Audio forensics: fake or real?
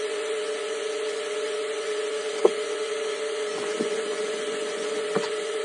fake